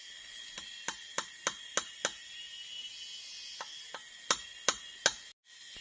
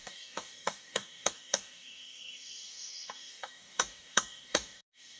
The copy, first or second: second